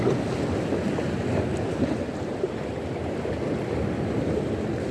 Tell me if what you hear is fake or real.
real